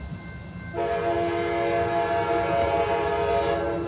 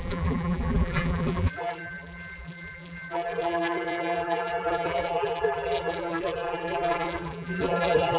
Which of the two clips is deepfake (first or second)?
second